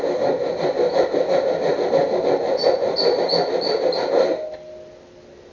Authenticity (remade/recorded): recorded